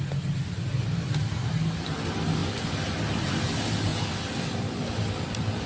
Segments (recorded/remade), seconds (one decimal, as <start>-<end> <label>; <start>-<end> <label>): 0.0-3.9 recorded; 3.9-5.7 remade